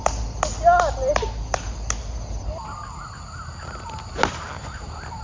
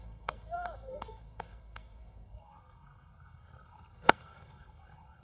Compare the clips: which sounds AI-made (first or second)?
second